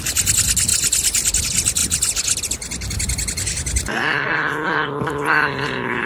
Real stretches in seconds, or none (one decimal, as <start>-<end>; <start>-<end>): 0.0-6.1